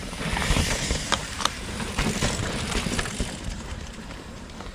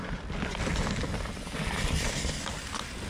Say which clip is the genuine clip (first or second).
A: second